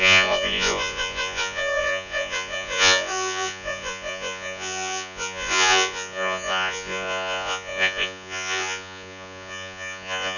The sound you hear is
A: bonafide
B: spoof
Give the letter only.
B